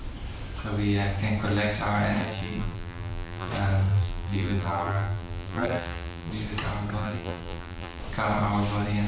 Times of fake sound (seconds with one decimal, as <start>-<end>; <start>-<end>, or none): 2.2-3.5; 3.9-6.3; 7.0-8.0